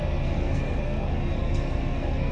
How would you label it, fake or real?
fake